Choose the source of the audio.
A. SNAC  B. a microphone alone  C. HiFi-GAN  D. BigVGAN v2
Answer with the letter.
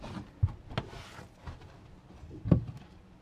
B